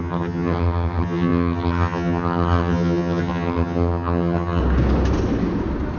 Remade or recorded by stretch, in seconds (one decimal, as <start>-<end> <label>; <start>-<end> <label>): 0.0-4.6 remade; 4.6-6.0 recorded